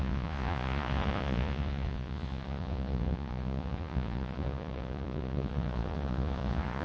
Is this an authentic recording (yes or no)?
no